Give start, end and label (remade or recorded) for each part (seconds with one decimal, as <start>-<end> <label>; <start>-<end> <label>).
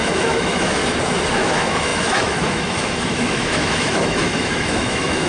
0.0-0.8 remade; 0.8-1.3 recorded; 1.3-5.3 remade